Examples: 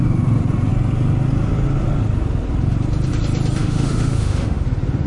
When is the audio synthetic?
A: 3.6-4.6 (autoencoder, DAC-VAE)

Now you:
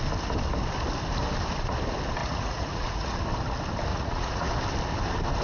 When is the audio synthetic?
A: 2.2-3.2 (vocoder, Vocos); 3.9-4.5

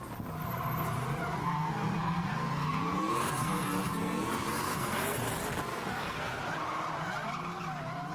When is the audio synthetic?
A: 1.4-5.2 (codec, SNAC); 5.7-6.4

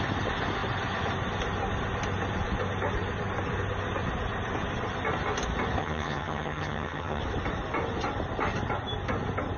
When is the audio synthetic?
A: 5.8-7.2 (vocoder, HiFi-GAN)

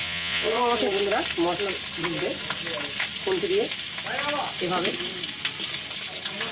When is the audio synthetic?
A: 0.0-0.6 (vocoder, Vocos)

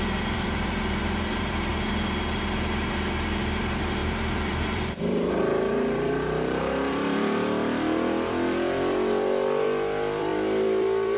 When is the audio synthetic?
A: 0.0-1.7 (vocoder, BigVGAN v2); 3.6-11.2